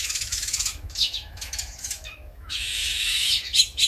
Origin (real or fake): fake